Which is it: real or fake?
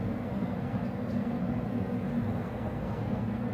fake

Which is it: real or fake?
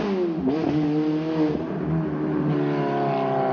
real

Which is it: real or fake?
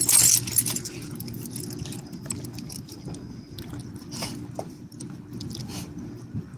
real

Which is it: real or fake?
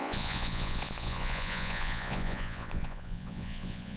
fake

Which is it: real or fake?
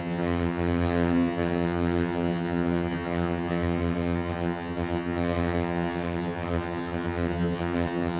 fake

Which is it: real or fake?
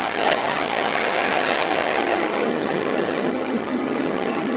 fake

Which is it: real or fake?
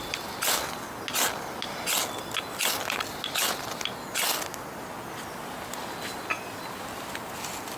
real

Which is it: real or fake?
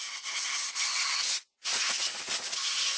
real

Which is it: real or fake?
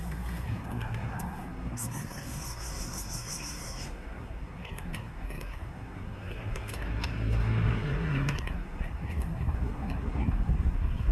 fake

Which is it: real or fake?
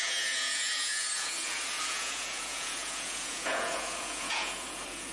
fake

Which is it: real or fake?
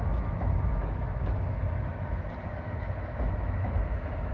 fake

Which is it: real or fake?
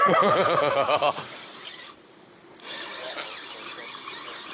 real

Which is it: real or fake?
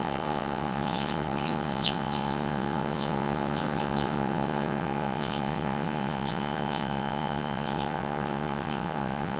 fake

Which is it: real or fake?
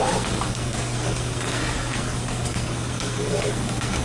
fake